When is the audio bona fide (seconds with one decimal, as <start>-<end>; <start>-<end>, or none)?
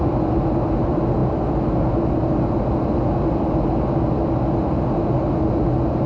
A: 0.0-6.1